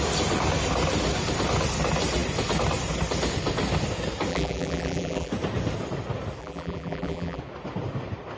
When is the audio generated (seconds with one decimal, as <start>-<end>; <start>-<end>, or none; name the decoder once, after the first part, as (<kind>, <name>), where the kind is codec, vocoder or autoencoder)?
4.3-5.3 (vocoder, BigVGAN v2); 6.4-7.4